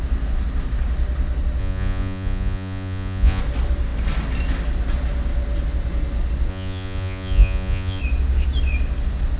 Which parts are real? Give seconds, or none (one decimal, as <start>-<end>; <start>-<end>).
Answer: 0.0-1.6; 3.4-6.5; 8.0-9.4